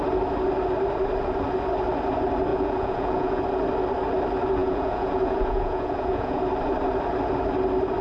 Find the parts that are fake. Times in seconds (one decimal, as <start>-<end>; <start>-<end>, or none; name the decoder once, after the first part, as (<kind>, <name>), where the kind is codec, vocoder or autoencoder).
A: 2.5-3.4 (vocoder, Vocos); 4.6-6.4